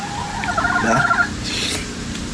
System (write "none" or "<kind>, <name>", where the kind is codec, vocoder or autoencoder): none